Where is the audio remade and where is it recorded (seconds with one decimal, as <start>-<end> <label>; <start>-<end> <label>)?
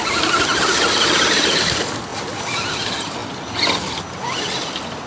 0.0-5.1 recorded